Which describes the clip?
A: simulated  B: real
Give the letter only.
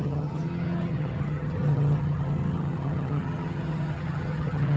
A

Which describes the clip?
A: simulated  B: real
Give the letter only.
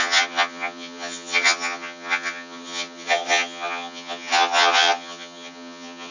A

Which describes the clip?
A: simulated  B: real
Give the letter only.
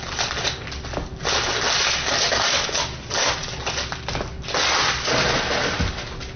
B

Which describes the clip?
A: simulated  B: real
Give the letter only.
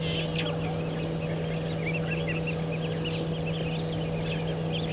B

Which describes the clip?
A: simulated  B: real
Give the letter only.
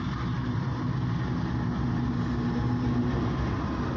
B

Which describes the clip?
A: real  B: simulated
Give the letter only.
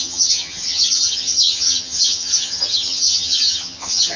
B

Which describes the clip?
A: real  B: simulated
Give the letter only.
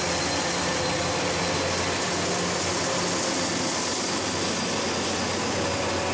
A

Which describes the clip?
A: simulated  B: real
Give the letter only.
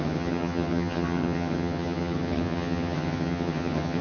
A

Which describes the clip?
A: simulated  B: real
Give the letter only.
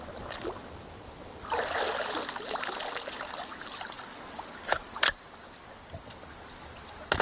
B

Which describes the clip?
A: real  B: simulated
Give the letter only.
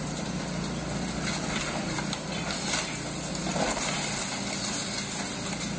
A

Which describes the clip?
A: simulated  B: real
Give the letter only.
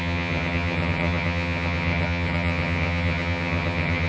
A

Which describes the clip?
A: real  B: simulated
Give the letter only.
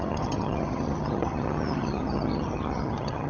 B